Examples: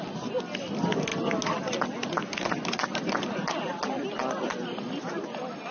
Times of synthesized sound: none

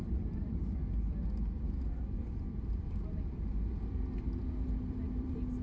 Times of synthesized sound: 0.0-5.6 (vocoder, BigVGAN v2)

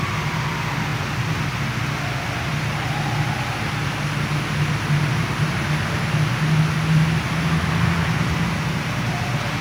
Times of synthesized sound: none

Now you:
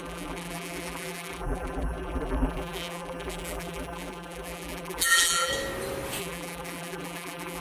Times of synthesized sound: 0.0-5.5 (vocoder, BigVGAN v2); 6.2-7.6

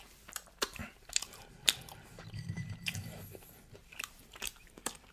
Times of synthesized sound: 0.0-5.1 (vocoder, BigVGAN v2)

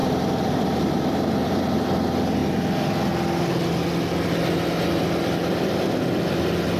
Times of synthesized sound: 0.0-1.6 (vocoder, BigVGAN v2)